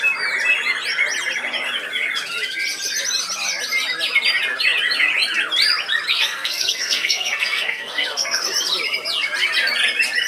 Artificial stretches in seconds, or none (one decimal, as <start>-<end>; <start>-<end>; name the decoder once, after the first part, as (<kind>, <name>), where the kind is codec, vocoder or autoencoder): 6.1-8.4 (codec, SNAC)